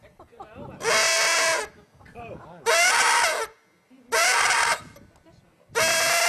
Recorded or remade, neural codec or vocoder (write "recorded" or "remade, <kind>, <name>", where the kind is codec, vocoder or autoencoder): recorded